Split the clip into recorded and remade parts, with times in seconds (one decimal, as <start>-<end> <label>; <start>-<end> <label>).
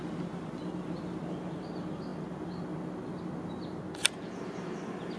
0.0-5.2 recorded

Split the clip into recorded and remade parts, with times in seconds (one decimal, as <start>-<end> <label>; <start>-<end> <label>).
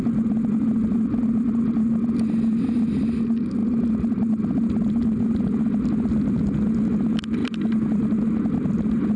0.0-9.2 recorded